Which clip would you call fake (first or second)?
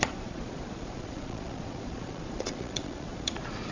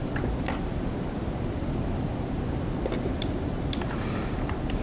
first